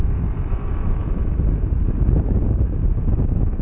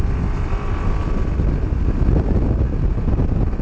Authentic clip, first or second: second